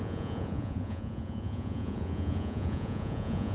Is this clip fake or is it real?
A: fake